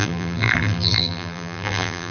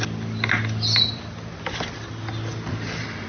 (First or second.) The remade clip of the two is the first